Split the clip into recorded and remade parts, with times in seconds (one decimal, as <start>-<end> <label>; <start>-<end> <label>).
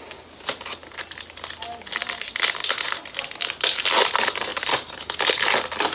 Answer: 0.0-5.9 recorded